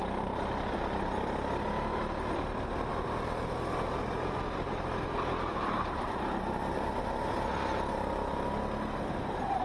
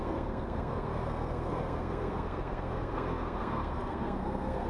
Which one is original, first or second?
first